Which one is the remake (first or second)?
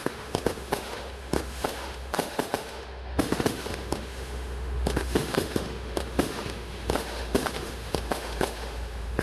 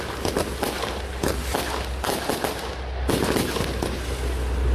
first